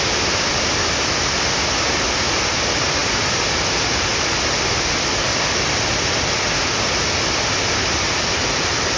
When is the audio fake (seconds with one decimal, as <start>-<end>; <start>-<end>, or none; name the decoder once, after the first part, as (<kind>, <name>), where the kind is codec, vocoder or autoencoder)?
none